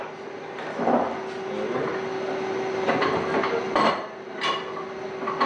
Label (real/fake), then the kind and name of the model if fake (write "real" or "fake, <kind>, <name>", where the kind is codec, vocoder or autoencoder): real